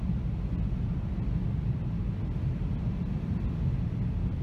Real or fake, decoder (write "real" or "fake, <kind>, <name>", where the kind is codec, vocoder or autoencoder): real